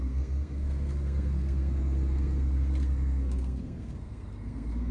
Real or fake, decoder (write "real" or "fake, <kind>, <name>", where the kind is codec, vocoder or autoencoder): fake, codec, SNAC